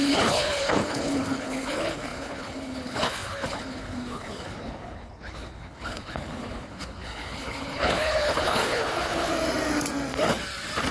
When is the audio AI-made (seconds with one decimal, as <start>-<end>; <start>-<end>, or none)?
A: 0.0-9.3